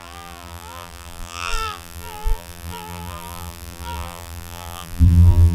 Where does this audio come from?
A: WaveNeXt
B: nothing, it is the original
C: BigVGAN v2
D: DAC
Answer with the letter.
C